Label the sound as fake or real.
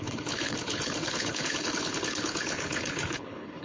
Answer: fake